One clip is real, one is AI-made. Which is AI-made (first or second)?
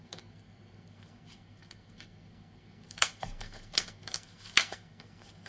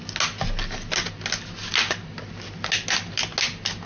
first